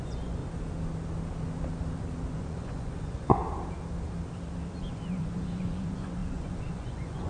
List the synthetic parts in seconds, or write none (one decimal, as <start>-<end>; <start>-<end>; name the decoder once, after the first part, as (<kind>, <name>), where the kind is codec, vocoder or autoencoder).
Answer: 0.0-0.4 (vocoder, Vocos); 2.3-3.4; 4.8-7.3